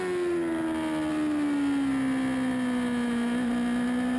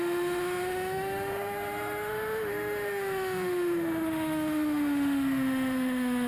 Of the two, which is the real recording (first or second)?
first